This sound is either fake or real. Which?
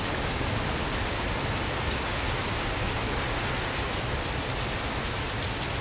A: real